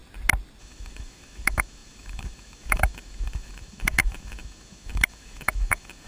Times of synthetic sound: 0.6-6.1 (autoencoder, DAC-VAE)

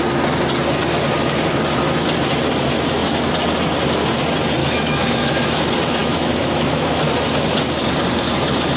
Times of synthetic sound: 4.6-5.6 (autoencoder, DAC-VAE); 6.0-7.0

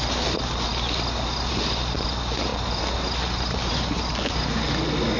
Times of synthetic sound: none

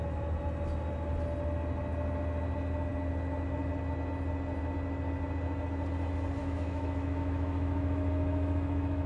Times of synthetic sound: 6.4-9.1 (autoencoder, DAC-VAE)

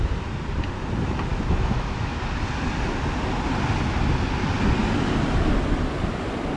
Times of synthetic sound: 1.3-2.2 (autoencoder, DAC-VAE)

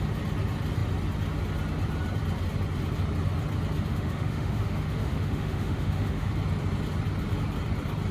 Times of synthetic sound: 3.9-6.3 (autoencoder, DAC-VAE)